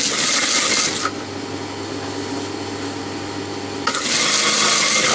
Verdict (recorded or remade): recorded